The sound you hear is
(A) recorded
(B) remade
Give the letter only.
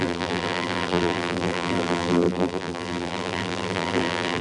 B